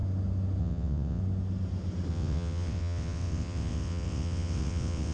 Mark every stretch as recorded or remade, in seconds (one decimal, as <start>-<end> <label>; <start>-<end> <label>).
0.0-0.6 recorded; 0.6-1.2 remade; 1.2-2.1 recorded; 2.1-5.1 remade